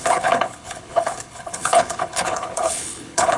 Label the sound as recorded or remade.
remade